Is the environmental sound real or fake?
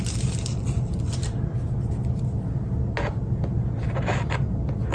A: real